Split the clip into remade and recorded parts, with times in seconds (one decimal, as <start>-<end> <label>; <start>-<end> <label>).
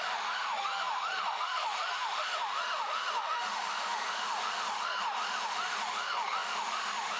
0.0-7.2 remade